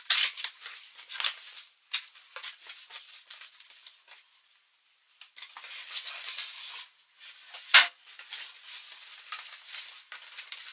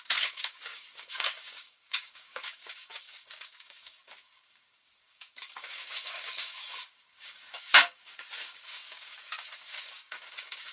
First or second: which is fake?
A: second